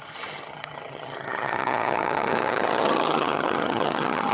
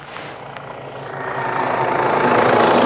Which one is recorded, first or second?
second